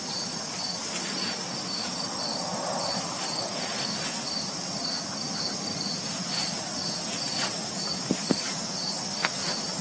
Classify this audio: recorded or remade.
recorded